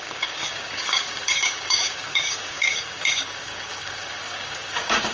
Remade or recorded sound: remade